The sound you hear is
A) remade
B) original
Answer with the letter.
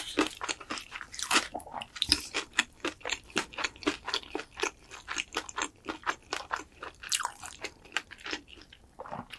A